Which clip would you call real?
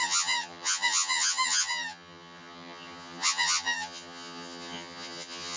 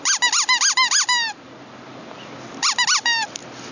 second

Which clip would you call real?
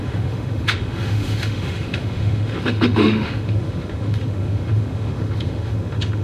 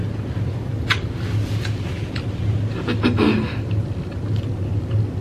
second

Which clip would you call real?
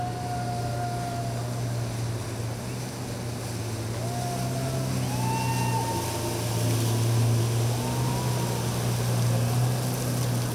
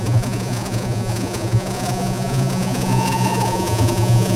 first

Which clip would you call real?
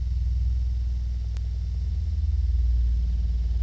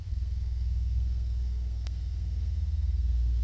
first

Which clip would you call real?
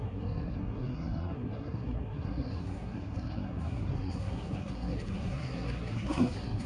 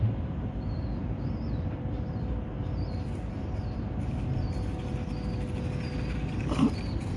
second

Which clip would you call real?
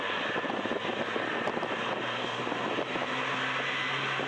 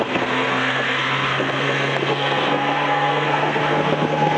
first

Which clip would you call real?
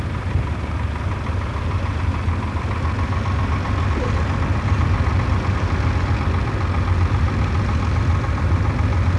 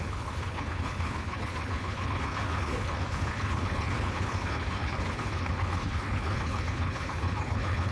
first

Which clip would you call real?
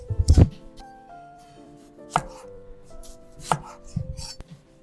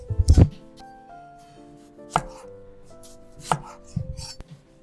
second